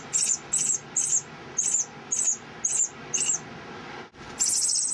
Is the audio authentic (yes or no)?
yes